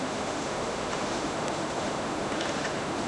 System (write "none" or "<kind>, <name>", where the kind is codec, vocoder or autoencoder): autoencoder, DAC-VAE